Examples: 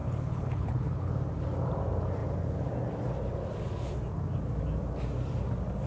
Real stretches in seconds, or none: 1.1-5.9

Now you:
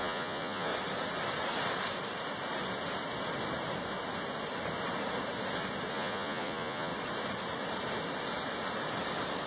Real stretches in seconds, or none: 0.7-5.9; 6.9-9.5

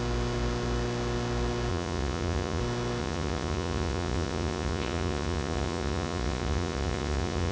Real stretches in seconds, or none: 0.0-1.7; 2.6-3.0

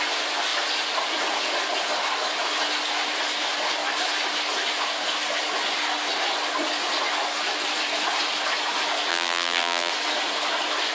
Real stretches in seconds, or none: 0.0-9.1; 9.9-10.9

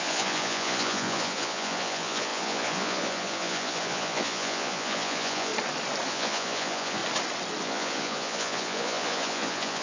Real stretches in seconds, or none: 5.5-6.1; 7.0-7.6

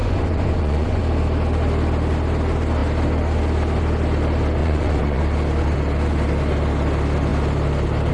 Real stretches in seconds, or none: 1.0-4.6; 5.2-8.1

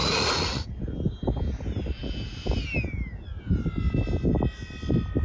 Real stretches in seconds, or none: 0.8-5.2